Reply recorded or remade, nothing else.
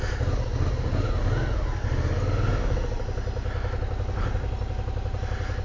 recorded